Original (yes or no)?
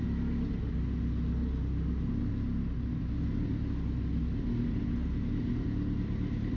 yes